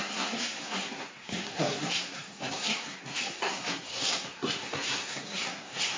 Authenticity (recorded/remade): remade